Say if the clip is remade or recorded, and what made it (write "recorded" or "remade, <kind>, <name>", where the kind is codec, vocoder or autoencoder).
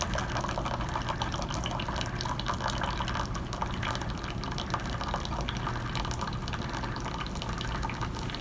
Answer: recorded